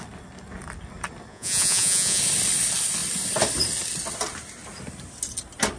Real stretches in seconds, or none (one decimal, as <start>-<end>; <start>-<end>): 0.0-1.3; 2.2-5.8